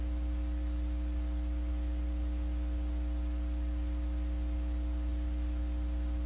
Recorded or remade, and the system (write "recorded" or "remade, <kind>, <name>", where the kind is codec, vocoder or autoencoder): recorded